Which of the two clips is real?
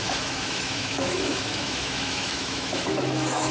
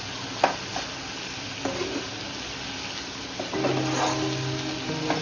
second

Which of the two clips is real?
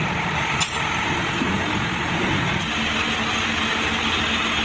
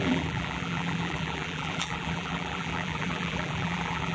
first